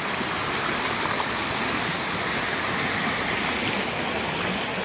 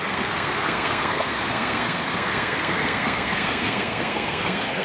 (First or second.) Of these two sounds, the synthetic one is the second